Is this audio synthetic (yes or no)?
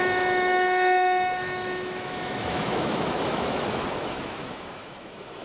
yes